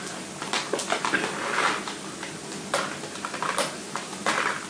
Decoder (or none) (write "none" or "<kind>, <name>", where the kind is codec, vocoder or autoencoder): none